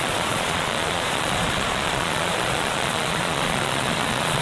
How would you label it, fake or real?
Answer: fake